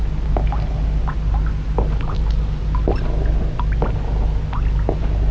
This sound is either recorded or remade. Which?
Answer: recorded